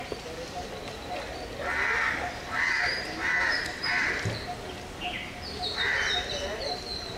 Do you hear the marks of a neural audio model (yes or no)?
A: no